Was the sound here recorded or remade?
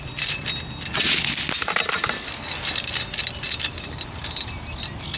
recorded